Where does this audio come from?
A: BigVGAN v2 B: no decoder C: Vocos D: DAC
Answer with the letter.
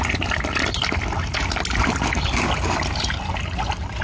B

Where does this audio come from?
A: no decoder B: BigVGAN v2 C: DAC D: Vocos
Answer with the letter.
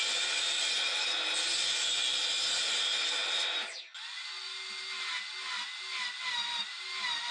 A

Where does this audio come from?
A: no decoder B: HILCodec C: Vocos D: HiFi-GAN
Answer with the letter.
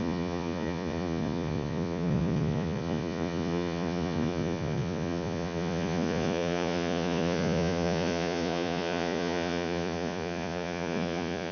C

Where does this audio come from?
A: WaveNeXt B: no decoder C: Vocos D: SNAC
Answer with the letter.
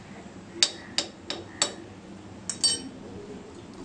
B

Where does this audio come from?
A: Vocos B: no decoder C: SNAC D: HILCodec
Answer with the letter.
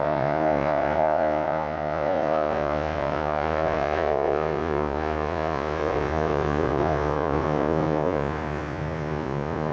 A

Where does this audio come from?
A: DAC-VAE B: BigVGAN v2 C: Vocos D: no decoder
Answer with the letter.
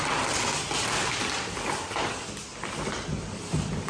D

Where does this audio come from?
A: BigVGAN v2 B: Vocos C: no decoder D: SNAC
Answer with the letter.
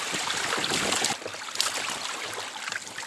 C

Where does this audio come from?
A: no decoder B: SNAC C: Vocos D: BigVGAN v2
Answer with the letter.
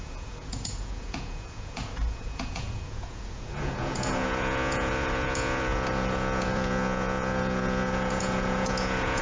C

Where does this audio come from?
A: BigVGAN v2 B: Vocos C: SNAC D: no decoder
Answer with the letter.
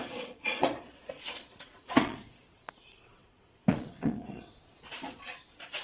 B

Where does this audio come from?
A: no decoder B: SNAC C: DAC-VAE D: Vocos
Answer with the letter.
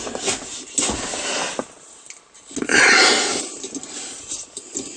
A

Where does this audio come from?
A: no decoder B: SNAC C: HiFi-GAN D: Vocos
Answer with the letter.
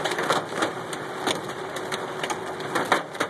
A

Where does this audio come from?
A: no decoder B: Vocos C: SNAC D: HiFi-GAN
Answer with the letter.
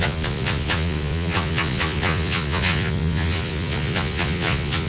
B